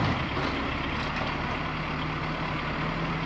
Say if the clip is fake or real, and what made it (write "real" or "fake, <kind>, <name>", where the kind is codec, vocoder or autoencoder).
real